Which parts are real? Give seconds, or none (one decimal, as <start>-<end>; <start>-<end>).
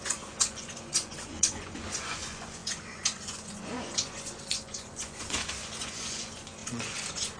none